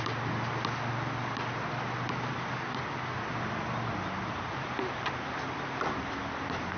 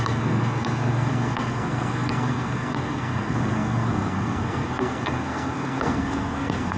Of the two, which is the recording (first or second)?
first